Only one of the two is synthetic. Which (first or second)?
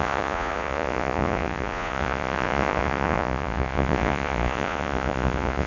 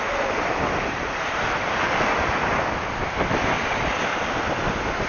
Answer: first